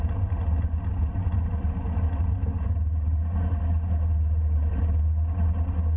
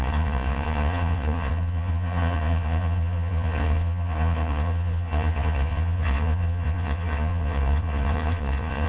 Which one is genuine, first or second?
first